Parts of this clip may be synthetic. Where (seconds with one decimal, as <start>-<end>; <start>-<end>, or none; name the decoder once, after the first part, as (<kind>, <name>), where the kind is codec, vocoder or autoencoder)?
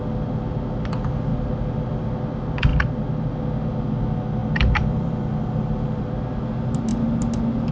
4.4-5.3 (vocoder, BigVGAN v2)